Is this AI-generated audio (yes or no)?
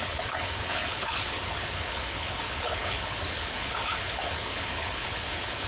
yes